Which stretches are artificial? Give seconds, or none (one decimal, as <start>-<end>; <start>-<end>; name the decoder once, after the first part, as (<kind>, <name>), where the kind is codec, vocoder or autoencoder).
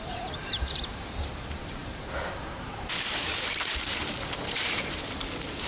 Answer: 0.0-3.3 (vocoder, BigVGAN v2); 4.3-5.7